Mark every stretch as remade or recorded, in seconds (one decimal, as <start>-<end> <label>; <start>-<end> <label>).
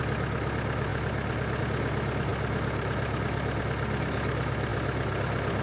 0.0-5.6 recorded